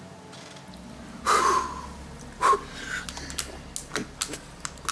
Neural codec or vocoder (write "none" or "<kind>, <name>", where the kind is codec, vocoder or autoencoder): none